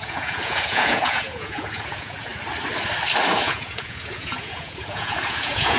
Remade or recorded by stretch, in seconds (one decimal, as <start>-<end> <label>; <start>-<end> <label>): 0.0-2.3 remade; 2.3-3.3 recorded; 3.3-5.8 remade